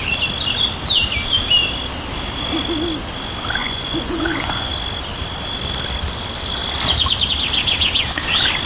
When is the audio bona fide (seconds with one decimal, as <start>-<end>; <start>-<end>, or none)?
0.0-3.6; 4.7-8.7